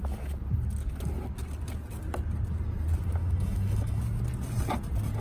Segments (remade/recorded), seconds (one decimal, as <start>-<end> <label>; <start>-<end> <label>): 0.0-3.2 recorded; 3.2-4.0 remade; 4.0-5.2 recorded

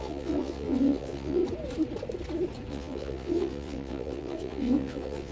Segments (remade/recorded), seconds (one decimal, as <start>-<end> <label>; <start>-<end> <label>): 0.0-1.4 remade; 1.4-2.7 recorded; 2.7-5.3 remade